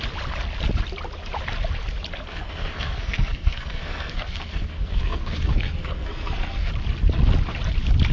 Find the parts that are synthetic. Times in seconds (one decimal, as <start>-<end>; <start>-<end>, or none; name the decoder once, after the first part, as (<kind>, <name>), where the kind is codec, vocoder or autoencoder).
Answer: 2.3-6.7 (codec, SNAC)